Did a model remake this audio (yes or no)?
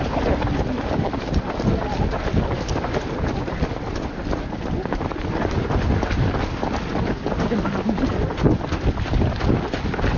no